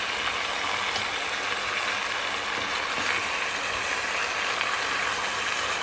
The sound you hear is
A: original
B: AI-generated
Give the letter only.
A